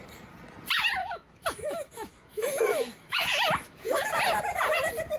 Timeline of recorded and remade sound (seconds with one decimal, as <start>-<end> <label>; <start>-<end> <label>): 0.0-1.0 recorded; 1.0-4.1 remade; 4.1-5.2 recorded